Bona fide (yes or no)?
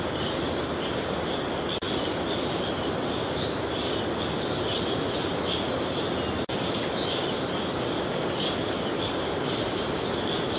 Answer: yes